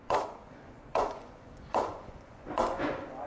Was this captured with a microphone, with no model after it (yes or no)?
no